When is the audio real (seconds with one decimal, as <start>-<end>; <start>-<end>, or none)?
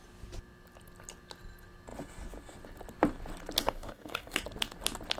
0.0-3.6; 4.4-5.2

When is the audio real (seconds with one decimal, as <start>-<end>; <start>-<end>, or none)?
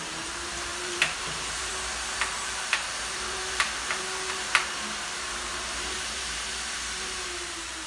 none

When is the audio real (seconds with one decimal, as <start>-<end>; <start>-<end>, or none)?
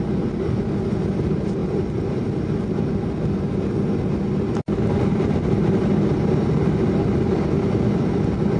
0.0-8.6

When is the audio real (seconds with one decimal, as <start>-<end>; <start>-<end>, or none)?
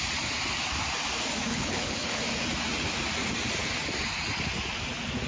0.0-1.5; 2.2-5.3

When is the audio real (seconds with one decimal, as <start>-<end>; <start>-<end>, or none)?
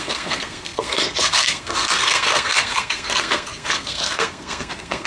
none